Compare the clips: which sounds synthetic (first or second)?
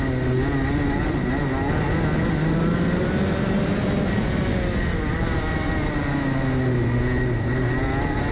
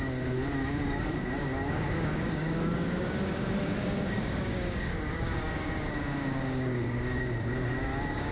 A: second